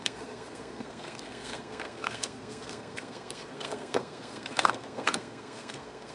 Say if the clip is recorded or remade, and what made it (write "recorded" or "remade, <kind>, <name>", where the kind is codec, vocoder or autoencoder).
remade, codec, SNAC